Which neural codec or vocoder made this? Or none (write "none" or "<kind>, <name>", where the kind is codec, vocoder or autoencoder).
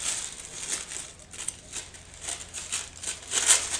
none